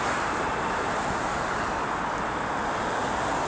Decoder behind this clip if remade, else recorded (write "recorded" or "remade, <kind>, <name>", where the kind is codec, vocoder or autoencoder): remade, vocoder, BigVGAN v2